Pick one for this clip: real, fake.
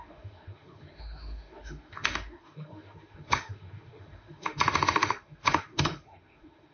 fake